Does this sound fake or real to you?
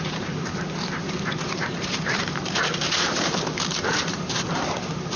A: fake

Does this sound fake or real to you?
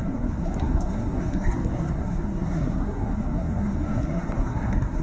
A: fake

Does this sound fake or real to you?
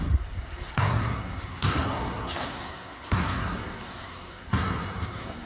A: fake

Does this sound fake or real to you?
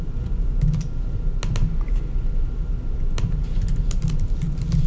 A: real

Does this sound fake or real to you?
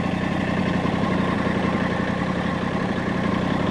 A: real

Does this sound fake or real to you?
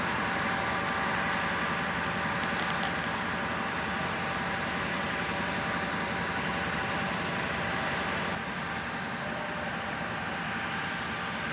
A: real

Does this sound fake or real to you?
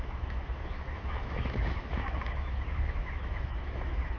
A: fake